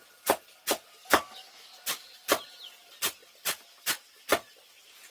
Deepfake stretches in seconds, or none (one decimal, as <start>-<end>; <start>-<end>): 1.0-1.7